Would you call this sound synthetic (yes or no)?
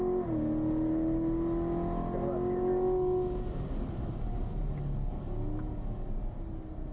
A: no